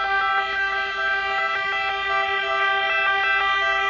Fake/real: real